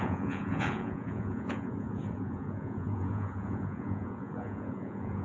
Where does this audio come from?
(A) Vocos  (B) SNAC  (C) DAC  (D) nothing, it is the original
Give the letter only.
A